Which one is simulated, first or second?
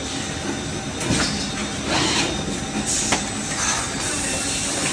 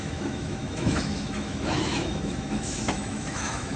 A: second